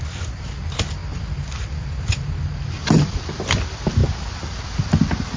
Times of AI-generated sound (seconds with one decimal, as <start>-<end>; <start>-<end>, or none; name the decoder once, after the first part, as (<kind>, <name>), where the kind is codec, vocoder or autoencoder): none

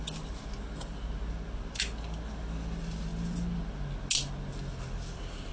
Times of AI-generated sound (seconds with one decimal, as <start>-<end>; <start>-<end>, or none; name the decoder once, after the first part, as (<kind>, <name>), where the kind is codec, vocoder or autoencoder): none